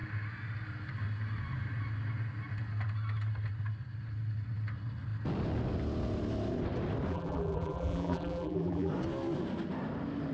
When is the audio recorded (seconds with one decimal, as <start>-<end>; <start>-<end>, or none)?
0.0-7.1; 8.9-10.3